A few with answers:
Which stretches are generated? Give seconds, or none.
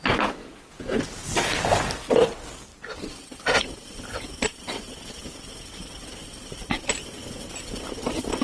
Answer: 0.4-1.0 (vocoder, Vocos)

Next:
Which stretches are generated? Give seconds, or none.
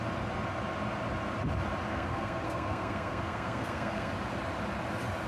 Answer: 1.9-4.1 (codec, SNAC)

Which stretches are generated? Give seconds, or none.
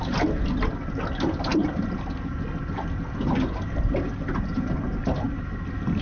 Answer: none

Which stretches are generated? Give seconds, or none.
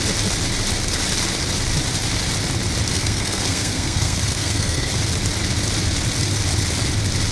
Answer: 2.9-4.9 (codec, SNAC)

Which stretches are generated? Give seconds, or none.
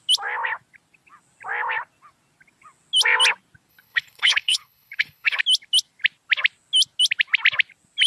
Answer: 3.7-5.4 (codec, HILCodec)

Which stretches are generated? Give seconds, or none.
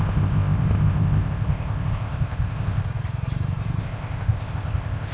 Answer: 0.0-2.8 (codec, ZipCodec); 3.8-5.1